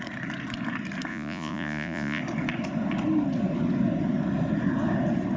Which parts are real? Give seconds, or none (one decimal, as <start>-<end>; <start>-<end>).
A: 0.0-1.1; 2.2-5.4